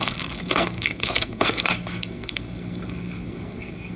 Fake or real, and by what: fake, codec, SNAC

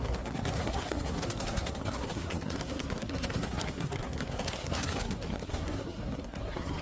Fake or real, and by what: fake, codec, SNAC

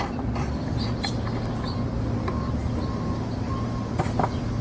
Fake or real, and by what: real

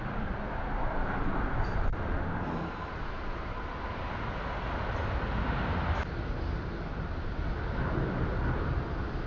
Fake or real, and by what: real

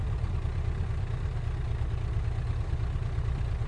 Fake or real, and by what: real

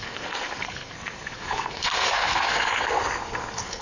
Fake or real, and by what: fake, codec, SNAC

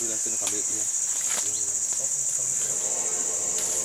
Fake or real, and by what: real